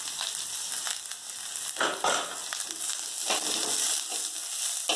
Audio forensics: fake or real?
real